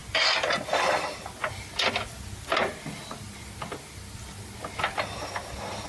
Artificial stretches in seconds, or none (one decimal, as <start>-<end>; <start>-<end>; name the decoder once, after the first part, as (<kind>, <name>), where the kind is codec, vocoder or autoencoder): none